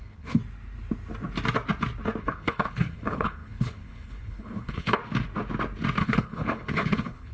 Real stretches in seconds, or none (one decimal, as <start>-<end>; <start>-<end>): 0.4-2.2; 5.0-6.0